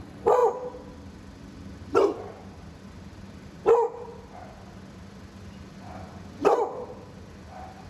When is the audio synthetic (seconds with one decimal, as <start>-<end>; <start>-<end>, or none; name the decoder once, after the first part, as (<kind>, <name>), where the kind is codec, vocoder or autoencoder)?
none